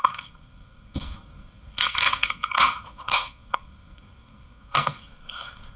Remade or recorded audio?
remade